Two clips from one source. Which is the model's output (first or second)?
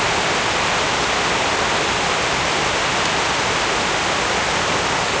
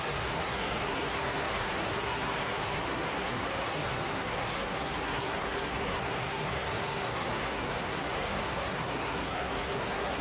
second